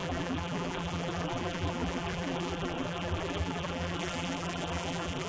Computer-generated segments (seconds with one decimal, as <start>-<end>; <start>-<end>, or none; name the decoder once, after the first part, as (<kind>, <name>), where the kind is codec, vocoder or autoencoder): 0.0-5.3 (vocoder, BigVGAN v2)